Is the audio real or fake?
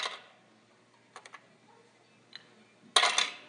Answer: real